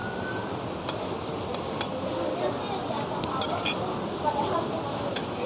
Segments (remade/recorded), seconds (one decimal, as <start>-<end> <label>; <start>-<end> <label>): 0.0-5.5 recorded